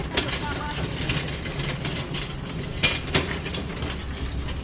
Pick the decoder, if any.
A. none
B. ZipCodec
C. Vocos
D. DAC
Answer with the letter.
A